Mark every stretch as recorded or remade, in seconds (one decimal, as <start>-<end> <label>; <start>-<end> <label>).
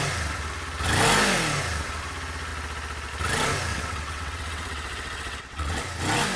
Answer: 0.0-3.7 recorded; 3.7-5.8 remade; 5.8-6.4 recorded